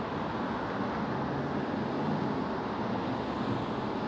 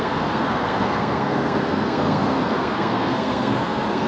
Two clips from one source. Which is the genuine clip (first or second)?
first